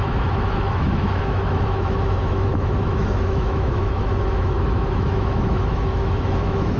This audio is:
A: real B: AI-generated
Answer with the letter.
B